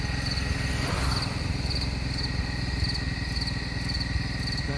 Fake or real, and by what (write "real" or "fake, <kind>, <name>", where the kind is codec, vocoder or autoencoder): real